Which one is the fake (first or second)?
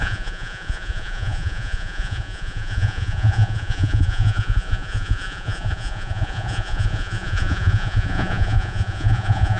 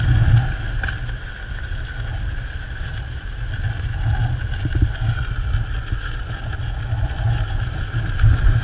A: first